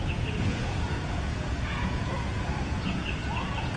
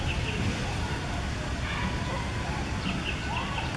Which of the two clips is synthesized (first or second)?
first